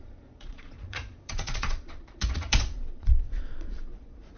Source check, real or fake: fake